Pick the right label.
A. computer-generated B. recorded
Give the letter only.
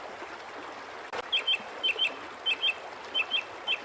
B